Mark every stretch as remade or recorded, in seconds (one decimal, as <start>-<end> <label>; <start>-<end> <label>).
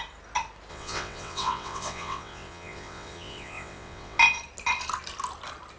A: 0.0-0.7 recorded; 0.7-4.2 remade; 4.2-5.8 recorded